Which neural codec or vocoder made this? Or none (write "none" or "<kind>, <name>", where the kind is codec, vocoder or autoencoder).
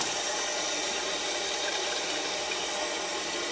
none